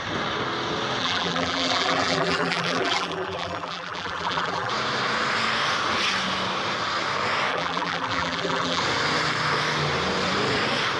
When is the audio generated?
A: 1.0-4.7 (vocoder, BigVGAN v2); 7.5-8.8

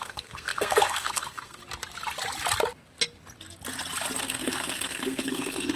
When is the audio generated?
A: 0.0-1.6 (codec, SNAC); 4.2-5.8

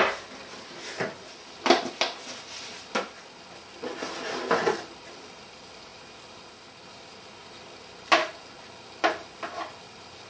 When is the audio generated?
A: none